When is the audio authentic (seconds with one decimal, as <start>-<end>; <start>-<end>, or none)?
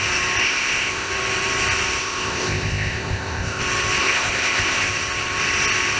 0.0-0.4; 1.1-2.0; 3.6-4.0; 4.8-6.0